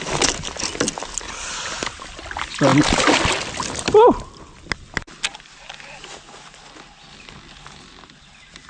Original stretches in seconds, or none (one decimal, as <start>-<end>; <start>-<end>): 0.0-8.7